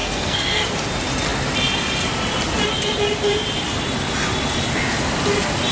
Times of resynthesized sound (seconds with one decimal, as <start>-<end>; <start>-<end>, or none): 0.0-0.7